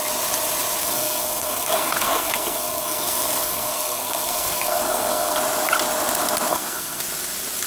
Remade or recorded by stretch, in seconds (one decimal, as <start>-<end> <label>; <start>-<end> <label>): 0.0-0.8 recorded; 0.8-5.4 remade; 5.4-6.5 recorded; 6.5-7.0 remade; 7.0-7.7 recorded